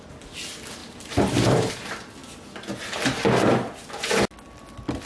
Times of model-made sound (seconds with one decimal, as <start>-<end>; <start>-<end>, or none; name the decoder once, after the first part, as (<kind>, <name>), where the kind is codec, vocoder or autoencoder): 0.8-1.7 (vocoder, BigVGAN v2)